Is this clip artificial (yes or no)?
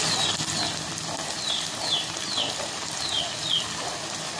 no